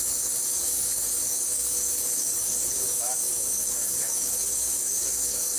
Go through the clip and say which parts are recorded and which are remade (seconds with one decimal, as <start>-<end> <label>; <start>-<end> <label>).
0.0-5.6 remade